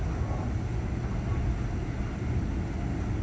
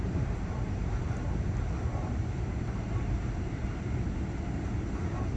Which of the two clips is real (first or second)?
first